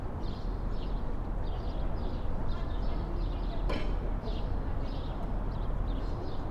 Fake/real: real